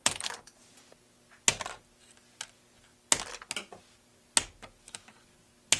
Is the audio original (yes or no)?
yes